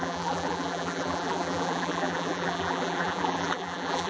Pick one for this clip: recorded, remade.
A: remade